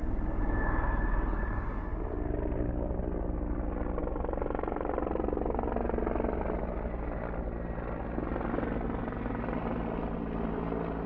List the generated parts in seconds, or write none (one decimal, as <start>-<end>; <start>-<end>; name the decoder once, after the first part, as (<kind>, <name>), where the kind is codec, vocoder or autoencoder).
none